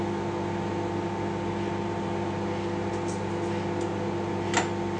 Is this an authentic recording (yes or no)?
yes